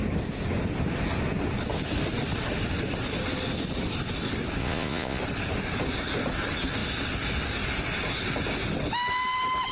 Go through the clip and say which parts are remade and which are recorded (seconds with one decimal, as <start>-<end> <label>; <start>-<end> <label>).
0.0-4.6 recorded; 4.6-5.2 remade; 5.2-9.7 recorded